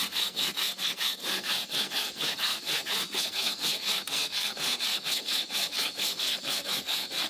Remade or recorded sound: remade